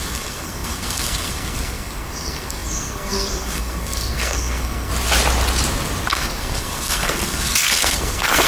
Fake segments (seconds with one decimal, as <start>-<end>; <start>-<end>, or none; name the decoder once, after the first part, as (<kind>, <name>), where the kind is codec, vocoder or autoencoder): 0.0-4.9 (codec, SNAC); 6.1-8.5